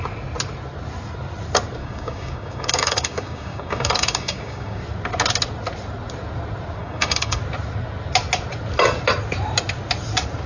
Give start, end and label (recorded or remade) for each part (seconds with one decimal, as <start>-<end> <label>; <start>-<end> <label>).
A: 0.0-1.8 recorded; 1.8-4.8 remade; 4.8-6.8 recorded; 6.8-7.4 remade; 7.4-10.5 recorded